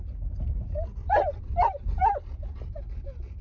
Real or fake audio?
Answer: real